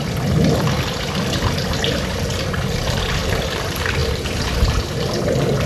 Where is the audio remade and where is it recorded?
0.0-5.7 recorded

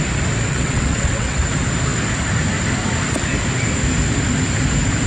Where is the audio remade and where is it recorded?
0.0-0.5 recorded; 0.5-1.4 remade; 1.4-5.1 recorded

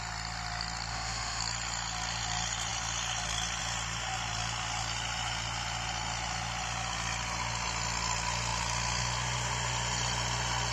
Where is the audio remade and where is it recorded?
0.0-0.9 recorded; 0.9-1.4 remade; 1.4-10.7 recorded

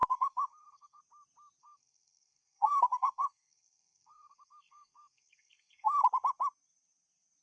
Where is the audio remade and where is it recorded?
0.0-1.0 remade; 1.0-1.6 recorded; 1.6-6.0 remade; 6.0-7.4 recorded

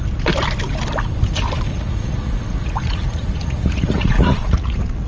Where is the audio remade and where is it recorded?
0.0-1.7 recorded; 1.7-5.1 remade